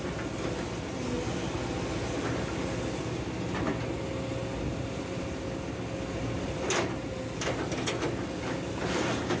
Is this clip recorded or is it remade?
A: recorded